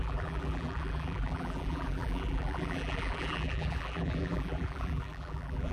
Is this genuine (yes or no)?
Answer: no